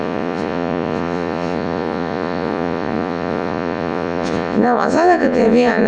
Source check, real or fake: fake